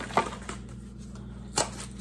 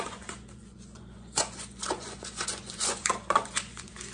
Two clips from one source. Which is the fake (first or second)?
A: second